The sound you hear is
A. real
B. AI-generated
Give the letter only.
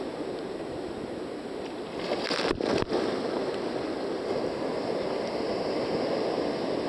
A